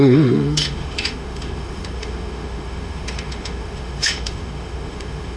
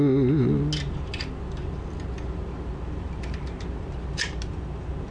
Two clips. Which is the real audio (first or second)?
second